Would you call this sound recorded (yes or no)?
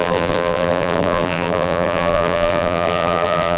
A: no